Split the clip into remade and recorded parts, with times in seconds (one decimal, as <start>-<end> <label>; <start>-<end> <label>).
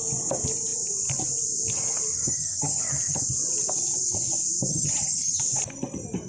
0.0-2.1 recorded; 2.1-3.2 remade; 3.2-4.7 recorded; 4.7-5.4 remade; 5.4-6.3 recorded